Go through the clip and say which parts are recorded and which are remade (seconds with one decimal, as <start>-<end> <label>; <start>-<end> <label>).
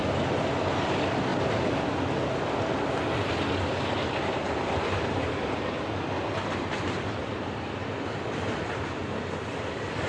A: 0.0-10.1 recorded